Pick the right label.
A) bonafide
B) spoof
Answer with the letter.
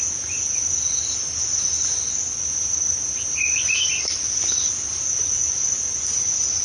A